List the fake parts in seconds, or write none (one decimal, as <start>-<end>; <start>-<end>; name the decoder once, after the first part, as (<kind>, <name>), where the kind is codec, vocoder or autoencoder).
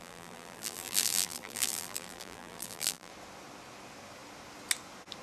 0.0-3.1 (vocoder, BigVGAN v2)